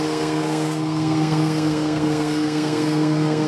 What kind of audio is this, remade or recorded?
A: remade